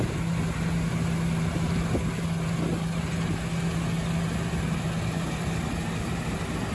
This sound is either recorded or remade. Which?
recorded